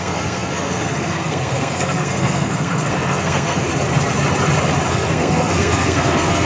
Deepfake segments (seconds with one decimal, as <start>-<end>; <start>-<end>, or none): 0.0-3.7; 4.9-6.4